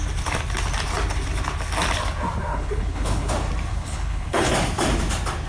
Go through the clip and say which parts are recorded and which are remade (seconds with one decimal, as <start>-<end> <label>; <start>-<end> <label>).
0.0-2.5 recorded; 2.5-3.3 remade; 3.3-3.7 recorded; 3.7-4.5 remade; 4.5-5.5 recorded